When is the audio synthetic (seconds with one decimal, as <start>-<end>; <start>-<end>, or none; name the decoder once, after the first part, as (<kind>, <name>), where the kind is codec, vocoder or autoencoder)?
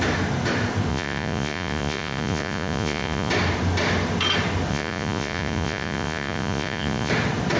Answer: 0.9-3.3 (vocoder, Vocos); 4.7-7.1